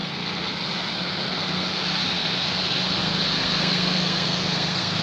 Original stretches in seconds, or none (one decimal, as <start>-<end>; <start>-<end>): none